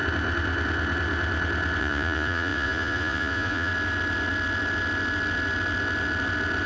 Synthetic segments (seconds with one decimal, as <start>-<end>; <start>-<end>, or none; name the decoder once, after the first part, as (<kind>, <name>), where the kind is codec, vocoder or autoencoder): 1.8-3.7 (vocoder, Vocos)